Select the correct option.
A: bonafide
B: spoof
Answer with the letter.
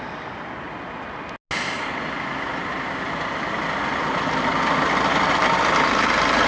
A